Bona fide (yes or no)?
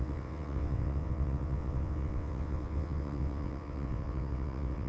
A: no